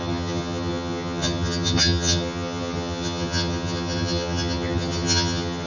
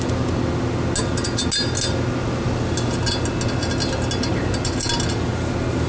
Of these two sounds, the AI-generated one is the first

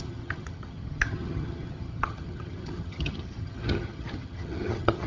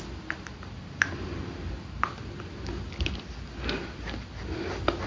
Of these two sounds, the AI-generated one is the first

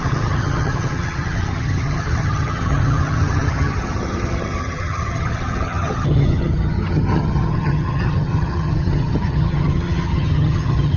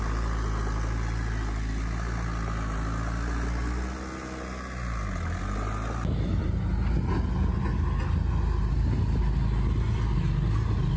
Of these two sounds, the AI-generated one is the first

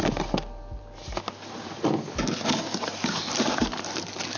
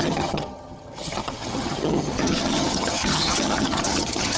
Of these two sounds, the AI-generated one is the second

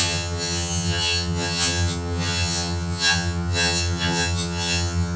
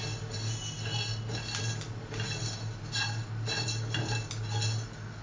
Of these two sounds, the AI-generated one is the first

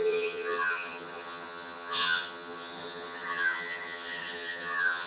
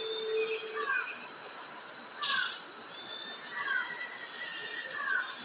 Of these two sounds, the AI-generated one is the first